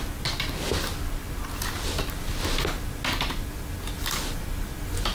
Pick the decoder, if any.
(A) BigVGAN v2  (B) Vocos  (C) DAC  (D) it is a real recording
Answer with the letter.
D